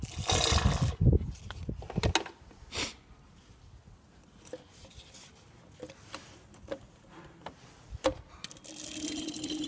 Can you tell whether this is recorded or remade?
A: recorded